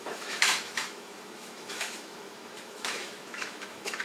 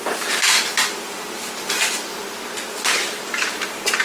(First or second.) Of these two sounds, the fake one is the first